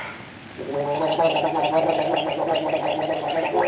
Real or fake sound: real